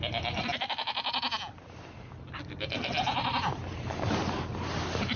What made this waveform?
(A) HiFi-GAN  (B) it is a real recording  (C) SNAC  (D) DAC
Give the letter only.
B